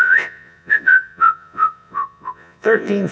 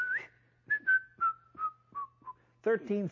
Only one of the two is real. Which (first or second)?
second